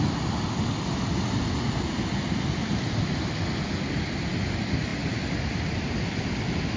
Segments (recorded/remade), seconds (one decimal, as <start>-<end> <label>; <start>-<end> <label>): 0.0-6.8 recorded